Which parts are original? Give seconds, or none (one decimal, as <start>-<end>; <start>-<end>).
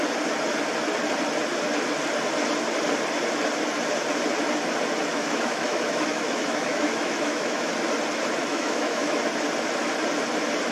0.0-5.1; 7.7-8.5; 9.2-10.7